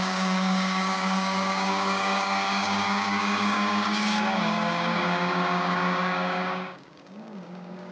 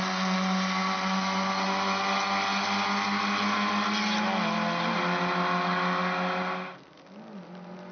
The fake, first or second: first